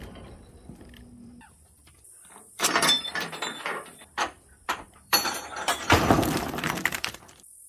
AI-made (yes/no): yes